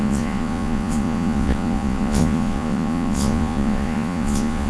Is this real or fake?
fake